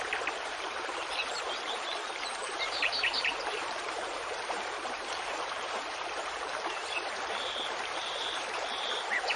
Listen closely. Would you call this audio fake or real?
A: fake